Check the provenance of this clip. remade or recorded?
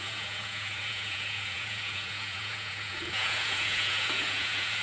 remade